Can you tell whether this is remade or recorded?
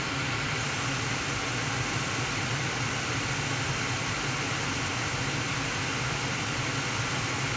recorded